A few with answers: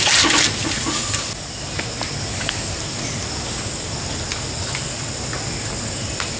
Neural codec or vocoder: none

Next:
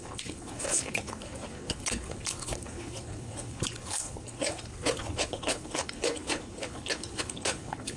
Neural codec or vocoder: codec, HILCodec